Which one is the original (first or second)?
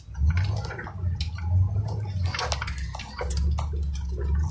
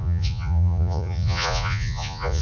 first